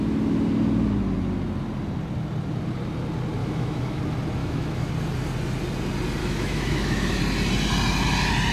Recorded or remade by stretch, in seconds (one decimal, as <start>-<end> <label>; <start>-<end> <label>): 0.0-3.4 recorded; 3.4-4.0 remade; 4.0-4.4 recorded; 4.4-4.9 remade; 4.9-6.2 recorded; 6.2-7.2 remade; 7.2-8.5 recorded